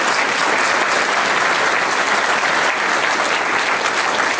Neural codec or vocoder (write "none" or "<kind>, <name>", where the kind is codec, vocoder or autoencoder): none